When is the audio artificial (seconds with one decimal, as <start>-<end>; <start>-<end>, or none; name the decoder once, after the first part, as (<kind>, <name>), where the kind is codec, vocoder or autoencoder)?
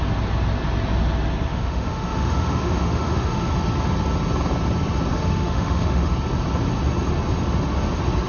1.5-3.5 (autoencoder, DAC-VAE); 5.1-6.1